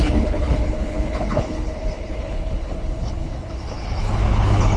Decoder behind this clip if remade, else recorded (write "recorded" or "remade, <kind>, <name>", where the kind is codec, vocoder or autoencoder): remade, codec, HILCodec